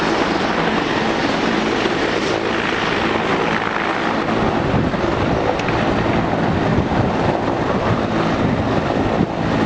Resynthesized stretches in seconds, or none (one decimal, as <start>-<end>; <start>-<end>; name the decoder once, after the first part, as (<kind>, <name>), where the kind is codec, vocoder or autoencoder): 1.2-2.3 (vocoder, BigVGAN v2); 6.7-8.1